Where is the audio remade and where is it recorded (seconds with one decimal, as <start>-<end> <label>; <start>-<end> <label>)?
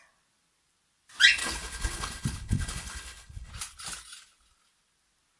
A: 0.0-1.4 recorded; 1.4-3.5 remade; 3.5-5.4 recorded